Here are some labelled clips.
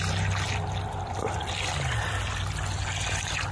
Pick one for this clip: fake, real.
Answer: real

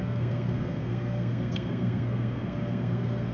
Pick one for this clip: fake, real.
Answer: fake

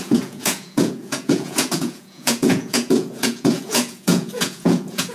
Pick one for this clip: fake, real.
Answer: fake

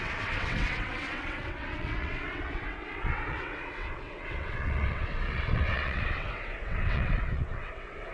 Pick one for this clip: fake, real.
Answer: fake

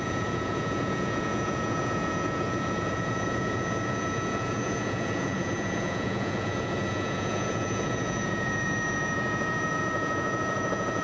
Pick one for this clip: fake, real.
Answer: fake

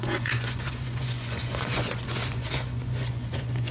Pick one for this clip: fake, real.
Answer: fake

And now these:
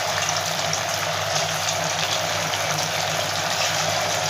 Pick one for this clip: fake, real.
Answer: fake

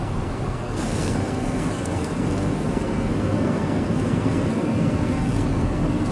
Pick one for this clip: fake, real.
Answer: fake